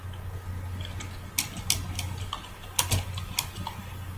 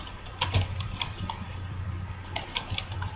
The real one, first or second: first